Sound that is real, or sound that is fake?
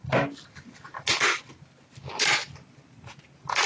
real